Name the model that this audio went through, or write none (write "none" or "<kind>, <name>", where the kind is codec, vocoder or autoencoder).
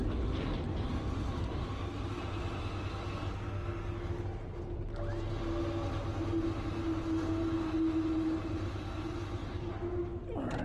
none